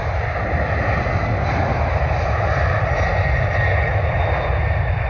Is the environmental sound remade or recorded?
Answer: recorded